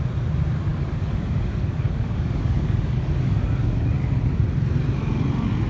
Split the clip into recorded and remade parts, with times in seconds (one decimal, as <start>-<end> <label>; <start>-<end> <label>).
0.0-0.7 recorded; 0.7-4.1 remade; 4.1-5.7 recorded